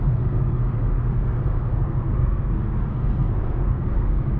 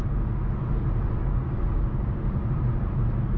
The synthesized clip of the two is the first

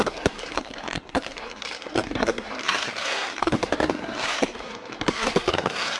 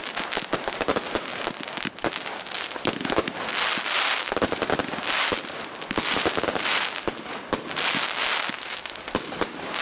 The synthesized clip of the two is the first